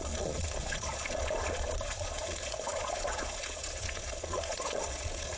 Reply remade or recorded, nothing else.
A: remade